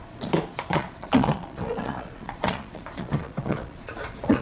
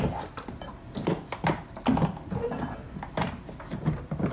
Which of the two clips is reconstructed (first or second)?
first